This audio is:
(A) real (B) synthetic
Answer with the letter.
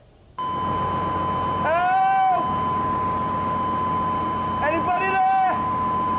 A